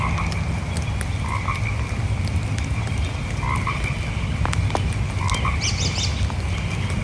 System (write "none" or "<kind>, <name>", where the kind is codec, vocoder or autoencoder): none